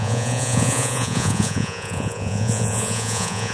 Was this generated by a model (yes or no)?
yes